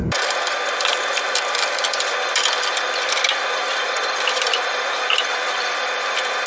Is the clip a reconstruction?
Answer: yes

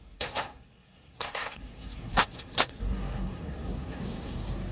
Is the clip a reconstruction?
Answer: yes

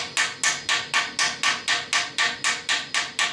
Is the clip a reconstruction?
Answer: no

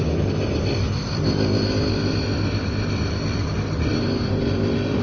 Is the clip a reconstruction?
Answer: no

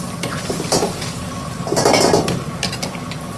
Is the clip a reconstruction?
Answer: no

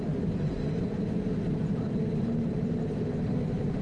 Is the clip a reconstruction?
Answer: yes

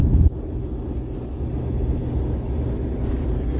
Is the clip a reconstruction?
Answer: no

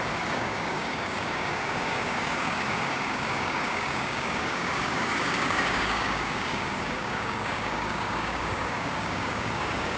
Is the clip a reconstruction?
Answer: yes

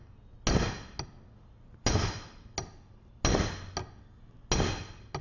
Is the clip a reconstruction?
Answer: no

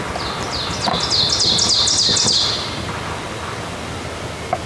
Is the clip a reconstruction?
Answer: no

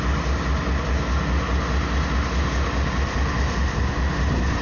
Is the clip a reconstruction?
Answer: no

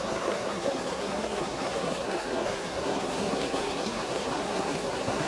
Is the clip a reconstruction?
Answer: yes